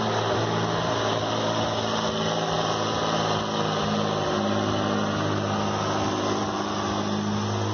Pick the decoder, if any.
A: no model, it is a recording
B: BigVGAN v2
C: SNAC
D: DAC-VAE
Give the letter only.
A